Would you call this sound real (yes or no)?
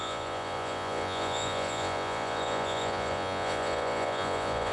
no